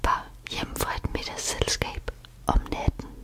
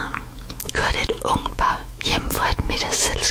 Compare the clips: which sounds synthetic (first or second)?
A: second